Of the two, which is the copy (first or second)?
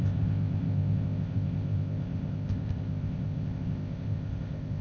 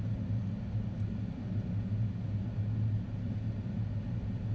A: first